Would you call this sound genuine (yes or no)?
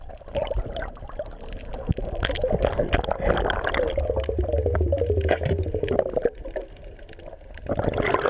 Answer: yes